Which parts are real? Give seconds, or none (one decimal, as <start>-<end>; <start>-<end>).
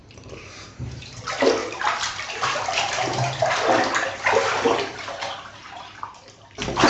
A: 1.0-1.6; 3.4-5.6; 6.2-6.9